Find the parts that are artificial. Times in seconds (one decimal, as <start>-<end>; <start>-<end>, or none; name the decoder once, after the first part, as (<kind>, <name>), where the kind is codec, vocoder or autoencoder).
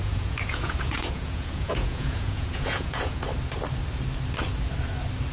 0.0-3.2 (vocoder, Vocos)